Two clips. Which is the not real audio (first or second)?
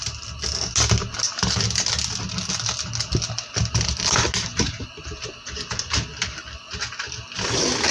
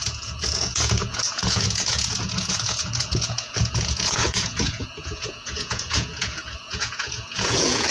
second